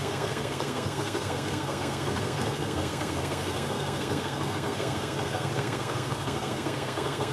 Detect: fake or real fake